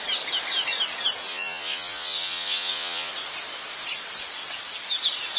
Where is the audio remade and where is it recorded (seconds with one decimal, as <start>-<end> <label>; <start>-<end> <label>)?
0.0-1.3 recorded; 1.3-3.1 remade; 3.1-5.4 recorded